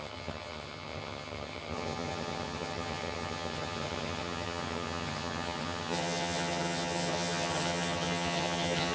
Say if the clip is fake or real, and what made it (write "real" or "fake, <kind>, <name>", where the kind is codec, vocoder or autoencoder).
fake, vocoder, HiFi-GAN